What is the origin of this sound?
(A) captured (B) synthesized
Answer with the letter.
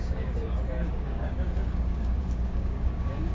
B